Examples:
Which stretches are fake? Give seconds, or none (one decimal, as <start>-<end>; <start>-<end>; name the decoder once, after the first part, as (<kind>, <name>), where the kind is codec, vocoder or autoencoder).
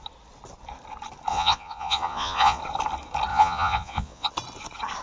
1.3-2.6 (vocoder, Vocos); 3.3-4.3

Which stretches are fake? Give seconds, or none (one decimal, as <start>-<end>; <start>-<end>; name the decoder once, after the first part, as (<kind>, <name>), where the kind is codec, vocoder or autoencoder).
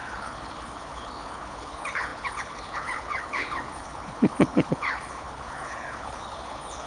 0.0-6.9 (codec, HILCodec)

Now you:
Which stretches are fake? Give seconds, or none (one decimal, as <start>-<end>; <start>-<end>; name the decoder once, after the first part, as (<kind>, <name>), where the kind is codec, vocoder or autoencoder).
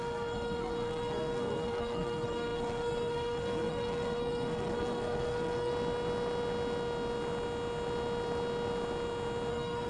0.0-5.7 (codec, SNAC); 9.5-9.9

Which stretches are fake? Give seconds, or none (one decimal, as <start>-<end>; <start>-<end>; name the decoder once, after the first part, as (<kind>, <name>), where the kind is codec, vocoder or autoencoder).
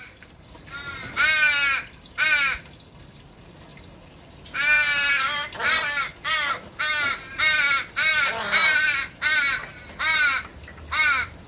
3.7-7.1 (vocoder, BigVGAN v2); 8.1-11.5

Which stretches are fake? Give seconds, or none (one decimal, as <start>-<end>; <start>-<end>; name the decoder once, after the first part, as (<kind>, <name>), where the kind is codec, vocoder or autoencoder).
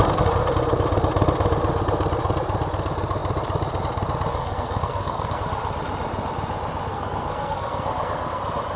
4.3-5.4 (codec, SNAC); 6.9-8.4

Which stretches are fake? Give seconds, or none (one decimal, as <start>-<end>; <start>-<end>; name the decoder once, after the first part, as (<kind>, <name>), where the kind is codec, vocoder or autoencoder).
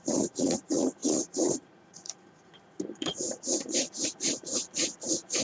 0.0-5.4 (vocoder, Vocos)